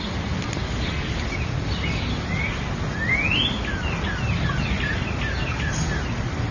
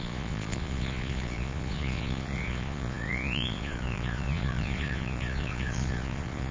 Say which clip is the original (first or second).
first